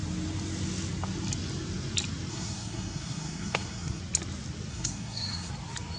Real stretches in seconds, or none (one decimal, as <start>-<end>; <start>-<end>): 0.0-2.3; 4.0-4.7; 5.5-6.0